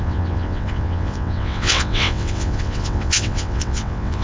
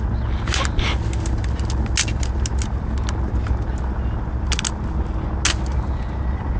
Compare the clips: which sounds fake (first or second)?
first